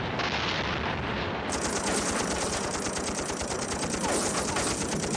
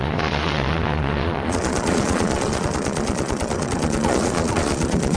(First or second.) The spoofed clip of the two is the second